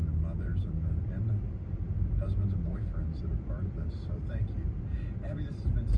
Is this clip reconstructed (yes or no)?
no